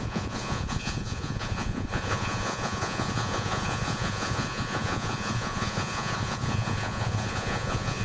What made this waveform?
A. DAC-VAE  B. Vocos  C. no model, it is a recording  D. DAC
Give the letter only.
B